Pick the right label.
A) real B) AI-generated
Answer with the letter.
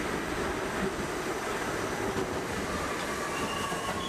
A